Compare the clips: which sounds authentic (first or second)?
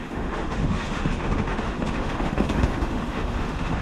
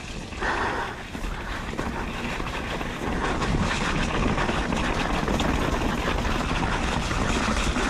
second